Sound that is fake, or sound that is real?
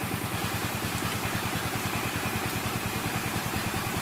fake